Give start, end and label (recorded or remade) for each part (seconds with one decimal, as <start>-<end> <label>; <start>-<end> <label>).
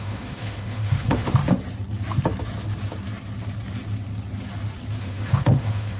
0.0-1.4 remade; 1.4-5.0 recorded; 5.0-6.0 remade